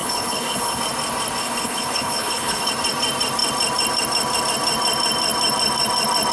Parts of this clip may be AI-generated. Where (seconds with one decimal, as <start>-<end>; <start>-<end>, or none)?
0.0-0.8; 1.4-2.7